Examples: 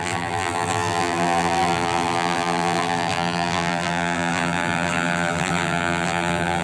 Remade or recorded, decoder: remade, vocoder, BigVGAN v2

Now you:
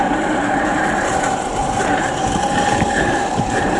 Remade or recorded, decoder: remade, vocoder, BigVGAN v2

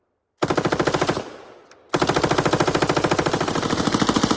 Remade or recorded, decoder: recorded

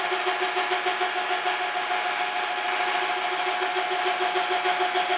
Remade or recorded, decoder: recorded